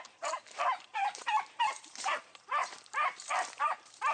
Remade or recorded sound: remade